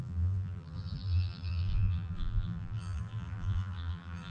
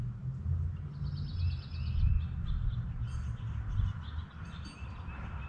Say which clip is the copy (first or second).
first